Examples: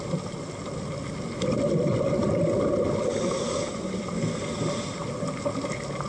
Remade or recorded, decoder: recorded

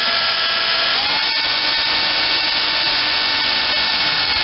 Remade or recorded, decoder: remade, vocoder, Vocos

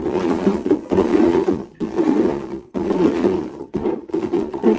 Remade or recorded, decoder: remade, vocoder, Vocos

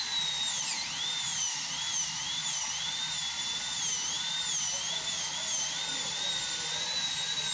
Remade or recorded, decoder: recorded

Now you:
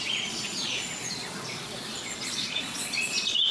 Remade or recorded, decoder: remade, vocoder, Vocos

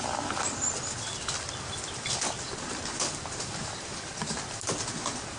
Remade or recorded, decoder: recorded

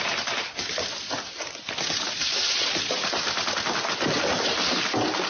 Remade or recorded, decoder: recorded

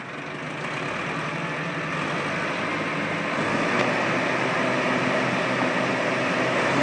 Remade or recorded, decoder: recorded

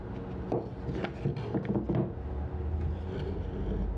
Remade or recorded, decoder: recorded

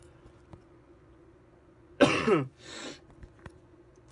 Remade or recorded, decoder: remade, vocoder, Vocos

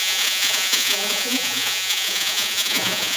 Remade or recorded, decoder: remade, vocoder, Vocos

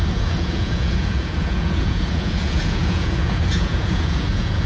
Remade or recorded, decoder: remade, vocoder, Vocos